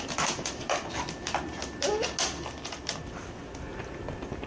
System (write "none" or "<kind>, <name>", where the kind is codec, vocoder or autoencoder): none